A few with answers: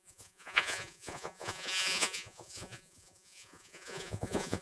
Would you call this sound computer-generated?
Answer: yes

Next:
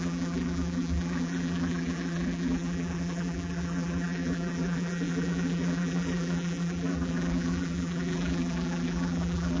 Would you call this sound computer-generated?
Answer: yes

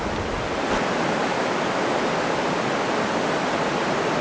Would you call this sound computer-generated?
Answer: no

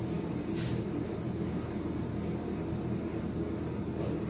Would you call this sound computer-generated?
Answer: no